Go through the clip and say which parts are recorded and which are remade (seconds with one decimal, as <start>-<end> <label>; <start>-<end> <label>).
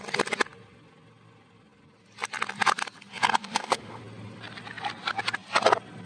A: 0.0-3.4 recorded; 3.4-4.0 remade; 4.0-6.1 recorded